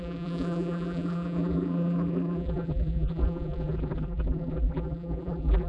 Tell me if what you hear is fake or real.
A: fake